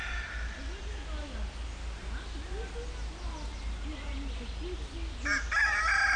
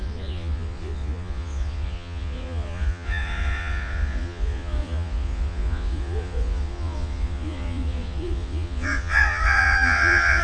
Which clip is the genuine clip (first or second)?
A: first